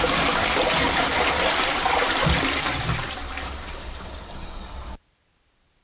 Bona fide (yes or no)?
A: no